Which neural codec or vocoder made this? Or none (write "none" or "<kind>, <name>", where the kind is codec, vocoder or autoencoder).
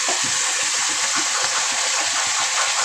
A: none